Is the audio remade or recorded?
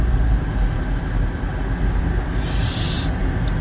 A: recorded